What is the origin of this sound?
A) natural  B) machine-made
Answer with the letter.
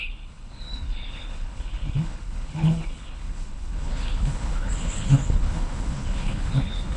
B